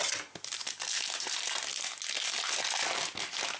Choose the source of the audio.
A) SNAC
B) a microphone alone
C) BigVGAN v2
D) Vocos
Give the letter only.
B